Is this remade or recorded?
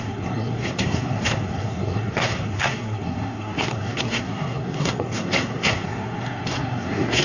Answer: remade